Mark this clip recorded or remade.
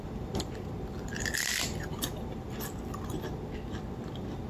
recorded